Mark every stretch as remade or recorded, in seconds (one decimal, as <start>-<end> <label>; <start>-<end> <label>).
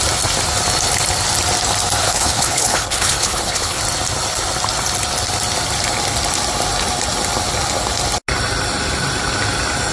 0.0-2.0 recorded; 2.0-3.8 remade; 3.8-9.9 recorded